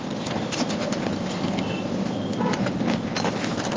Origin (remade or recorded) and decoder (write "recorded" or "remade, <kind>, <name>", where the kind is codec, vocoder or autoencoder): recorded